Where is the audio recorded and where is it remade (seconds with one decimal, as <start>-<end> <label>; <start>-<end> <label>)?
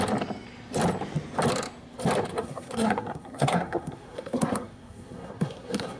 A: 0.0-2.3 recorded; 2.3-6.0 remade